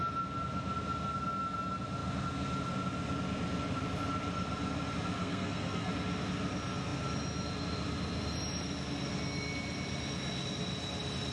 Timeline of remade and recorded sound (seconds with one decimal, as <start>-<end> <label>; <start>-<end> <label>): 0.0-5.2 recorded; 5.2-5.9 remade; 5.9-11.3 recorded